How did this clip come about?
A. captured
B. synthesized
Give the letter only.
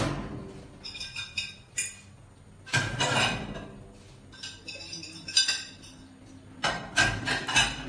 A